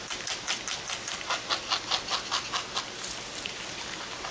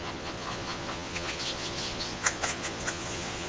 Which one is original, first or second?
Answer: first